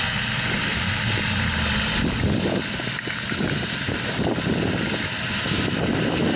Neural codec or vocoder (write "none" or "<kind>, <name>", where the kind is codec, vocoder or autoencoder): none